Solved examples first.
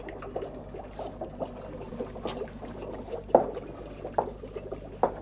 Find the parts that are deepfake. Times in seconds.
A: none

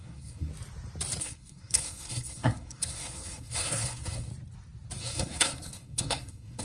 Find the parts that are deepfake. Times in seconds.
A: 0.0-0.5 (codec, SNAC); 1.2-4.3; 5.0-6.6

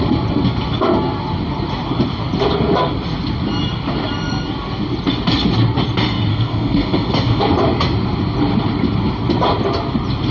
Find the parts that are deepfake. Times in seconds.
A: 6.3-7.4 (codec, SNAC)

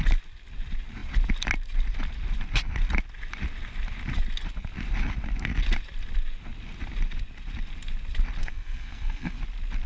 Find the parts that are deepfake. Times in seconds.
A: 8.4-9.4 (codec, SNAC)

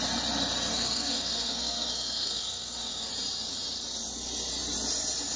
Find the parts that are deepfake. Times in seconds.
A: 0.7-3.1 (codec, SNAC)

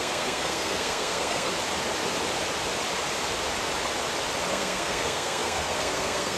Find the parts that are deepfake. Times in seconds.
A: 0.0-1.5 (codec, SNAC); 4.5-6.4

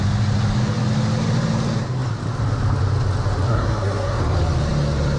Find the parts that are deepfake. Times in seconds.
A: 3.5-4.2 (codec, SNAC)